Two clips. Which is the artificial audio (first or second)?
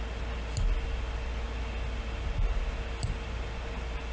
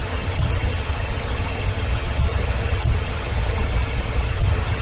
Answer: second